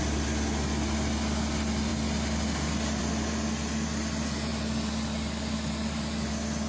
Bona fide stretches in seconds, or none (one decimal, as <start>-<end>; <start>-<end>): 0.0-6.7